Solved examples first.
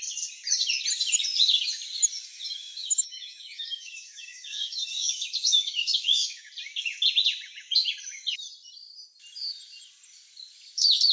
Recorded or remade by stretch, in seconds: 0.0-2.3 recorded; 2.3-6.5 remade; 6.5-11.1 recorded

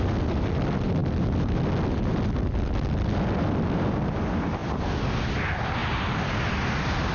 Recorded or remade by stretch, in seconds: 0.0-7.1 recorded